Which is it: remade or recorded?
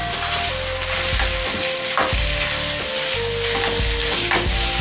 recorded